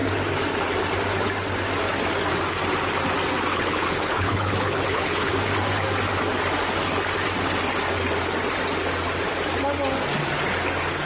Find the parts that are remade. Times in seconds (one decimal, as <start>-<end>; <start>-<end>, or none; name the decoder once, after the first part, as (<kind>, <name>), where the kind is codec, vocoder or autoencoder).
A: 3.5-5.3 (codec, HILCodec)